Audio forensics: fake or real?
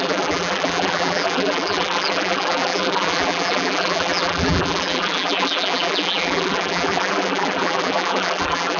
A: fake